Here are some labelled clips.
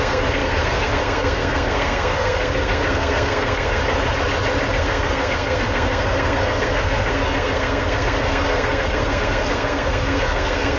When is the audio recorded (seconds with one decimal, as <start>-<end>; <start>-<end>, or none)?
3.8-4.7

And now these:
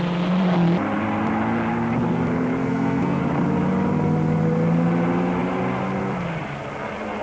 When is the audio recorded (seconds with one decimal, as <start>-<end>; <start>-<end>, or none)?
0.0-2.6; 3.2-7.2

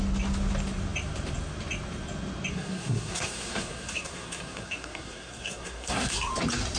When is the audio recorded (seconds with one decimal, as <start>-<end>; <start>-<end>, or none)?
0.0-2.5; 6.3-6.8